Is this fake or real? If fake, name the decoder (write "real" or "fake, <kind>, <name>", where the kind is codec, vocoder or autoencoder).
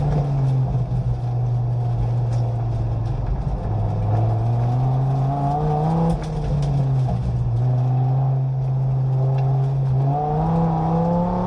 real